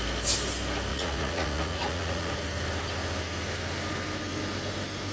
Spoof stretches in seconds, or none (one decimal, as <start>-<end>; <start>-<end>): 0.9-2.3